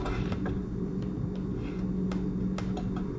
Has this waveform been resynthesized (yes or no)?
no